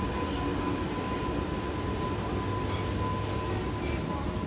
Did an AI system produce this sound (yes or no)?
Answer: no